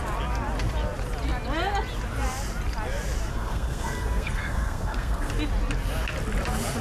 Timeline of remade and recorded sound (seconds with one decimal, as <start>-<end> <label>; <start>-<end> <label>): 0.0-3.3 recorded; 3.3-5.3 remade; 5.3-6.8 recorded